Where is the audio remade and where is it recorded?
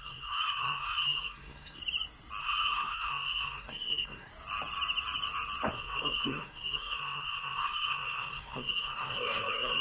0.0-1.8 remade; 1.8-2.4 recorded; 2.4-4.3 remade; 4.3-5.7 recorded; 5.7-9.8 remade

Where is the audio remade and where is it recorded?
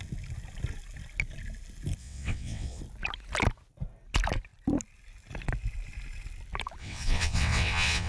0.0-2.0 recorded; 2.0-2.8 remade; 2.8-6.8 recorded; 6.8-8.1 remade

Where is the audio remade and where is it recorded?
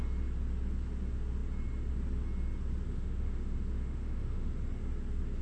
0.0-2.9 recorded; 2.9-4.5 remade; 4.5-5.4 recorded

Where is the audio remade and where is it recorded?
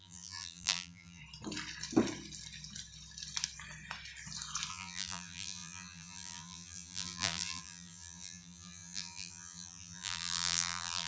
0.0-1.2 remade; 1.2-4.7 recorded; 4.7-11.1 remade